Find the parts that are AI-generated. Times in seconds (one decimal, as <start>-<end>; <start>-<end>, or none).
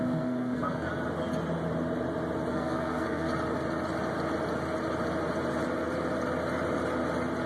0.0-0.9; 2.5-3.3